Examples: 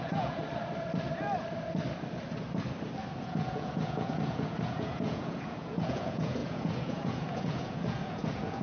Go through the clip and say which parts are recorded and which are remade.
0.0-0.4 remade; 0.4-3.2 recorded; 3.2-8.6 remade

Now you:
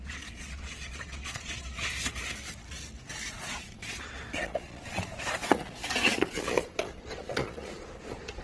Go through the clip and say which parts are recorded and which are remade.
0.0-1.9 remade; 1.9-3.3 recorded; 3.3-8.4 remade

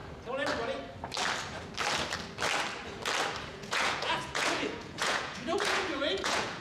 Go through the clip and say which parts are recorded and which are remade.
0.0-3.5 recorded; 3.5-6.6 remade

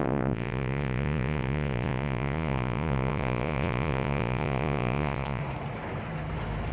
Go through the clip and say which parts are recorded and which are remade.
0.0-5.4 remade; 5.4-6.7 recorded